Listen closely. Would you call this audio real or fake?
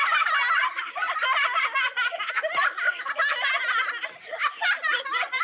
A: real